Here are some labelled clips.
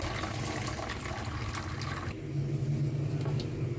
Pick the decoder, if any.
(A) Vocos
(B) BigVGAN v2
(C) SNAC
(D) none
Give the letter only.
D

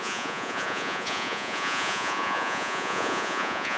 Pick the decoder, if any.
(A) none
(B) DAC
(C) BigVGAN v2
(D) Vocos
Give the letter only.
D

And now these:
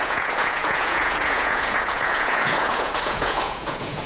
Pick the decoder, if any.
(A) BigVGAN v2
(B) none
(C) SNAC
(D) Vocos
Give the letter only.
D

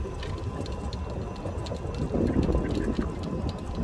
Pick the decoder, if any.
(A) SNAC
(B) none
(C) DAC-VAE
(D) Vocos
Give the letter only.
B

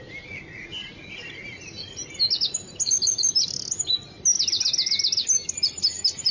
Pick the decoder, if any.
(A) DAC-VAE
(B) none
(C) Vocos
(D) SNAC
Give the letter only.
B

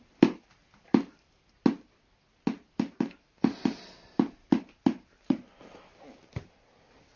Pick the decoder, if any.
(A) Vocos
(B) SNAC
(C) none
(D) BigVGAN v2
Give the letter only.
C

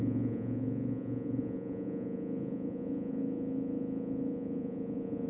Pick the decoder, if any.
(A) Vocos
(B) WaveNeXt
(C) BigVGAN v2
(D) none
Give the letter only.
A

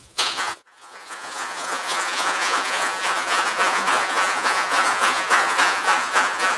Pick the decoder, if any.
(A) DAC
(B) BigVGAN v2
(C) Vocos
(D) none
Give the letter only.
C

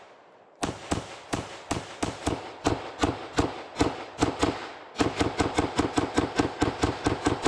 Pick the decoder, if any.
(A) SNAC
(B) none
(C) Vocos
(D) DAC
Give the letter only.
B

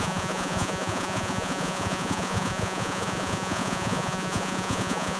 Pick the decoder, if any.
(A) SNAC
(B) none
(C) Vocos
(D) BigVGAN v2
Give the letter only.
C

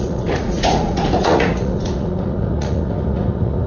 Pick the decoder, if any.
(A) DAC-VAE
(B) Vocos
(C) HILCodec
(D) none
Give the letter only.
B